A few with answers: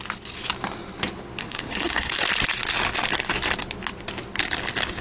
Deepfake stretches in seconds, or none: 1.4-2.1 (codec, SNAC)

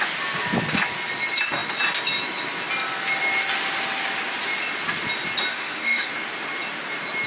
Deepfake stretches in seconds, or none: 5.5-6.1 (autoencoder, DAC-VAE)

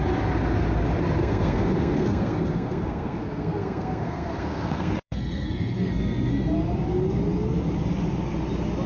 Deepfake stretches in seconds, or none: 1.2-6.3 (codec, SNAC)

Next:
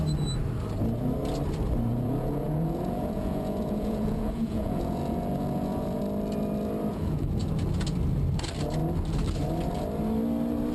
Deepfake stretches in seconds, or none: 1.9-6.0 (vocoder, Vocos); 6.9-7.4